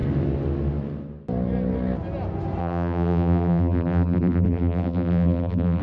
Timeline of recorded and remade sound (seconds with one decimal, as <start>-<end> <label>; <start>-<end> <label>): 0.0-2.6 recorded; 2.6-5.8 remade